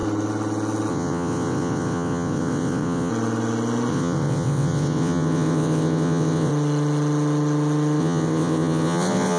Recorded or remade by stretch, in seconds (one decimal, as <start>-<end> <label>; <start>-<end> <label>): 0.0-0.9 recorded; 0.9-3.1 remade; 3.1-3.9 recorded; 3.9-6.5 remade; 6.5-8.0 recorded; 8.0-9.4 remade